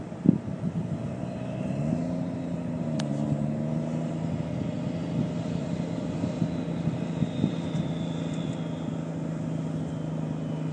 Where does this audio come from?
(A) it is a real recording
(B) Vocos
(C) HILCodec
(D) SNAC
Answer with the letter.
A